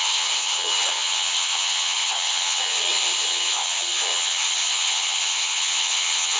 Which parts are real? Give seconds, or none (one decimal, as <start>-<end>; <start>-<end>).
none